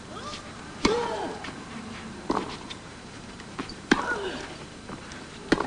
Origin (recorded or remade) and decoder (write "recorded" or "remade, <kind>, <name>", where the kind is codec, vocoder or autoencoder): remade, vocoder, BigVGAN v2